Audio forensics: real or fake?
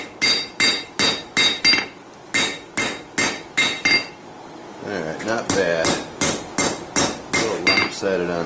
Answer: real